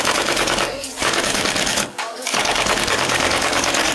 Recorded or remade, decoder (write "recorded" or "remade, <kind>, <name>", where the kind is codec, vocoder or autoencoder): remade, codec, DAC